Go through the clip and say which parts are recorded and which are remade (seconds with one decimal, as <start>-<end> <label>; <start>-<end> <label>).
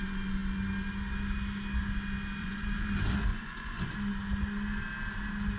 0.0-2.4 recorded; 2.4-2.9 remade; 2.9-3.3 recorded; 3.3-3.9 remade; 3.9-5.6 recorded